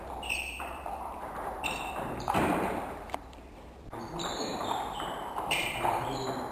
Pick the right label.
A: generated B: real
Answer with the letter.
A